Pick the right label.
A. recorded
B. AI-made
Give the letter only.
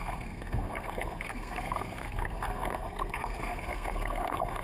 B